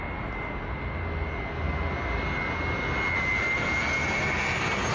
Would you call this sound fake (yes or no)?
no